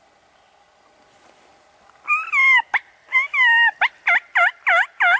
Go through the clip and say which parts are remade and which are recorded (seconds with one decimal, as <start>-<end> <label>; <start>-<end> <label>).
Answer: 0.0-5.2 recorded